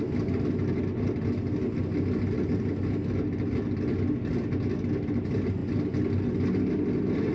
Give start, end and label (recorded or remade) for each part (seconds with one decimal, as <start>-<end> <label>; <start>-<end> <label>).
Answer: 0.0-7.3 recorded